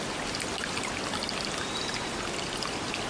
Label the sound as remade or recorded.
recorded